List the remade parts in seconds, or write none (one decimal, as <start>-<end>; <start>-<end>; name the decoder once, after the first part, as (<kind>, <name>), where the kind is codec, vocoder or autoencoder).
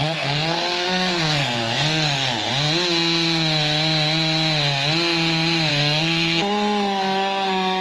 0.0-2.5 (codec, SNAC); 5.7-7.8